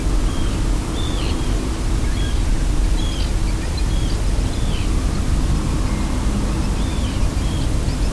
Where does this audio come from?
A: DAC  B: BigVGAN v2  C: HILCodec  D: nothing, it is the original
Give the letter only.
D